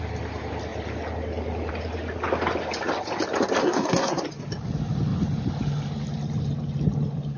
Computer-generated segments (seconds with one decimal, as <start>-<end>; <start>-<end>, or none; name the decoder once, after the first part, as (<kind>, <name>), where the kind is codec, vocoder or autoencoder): 3.6-4.2 (codec, SNAC)